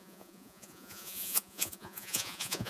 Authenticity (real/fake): fake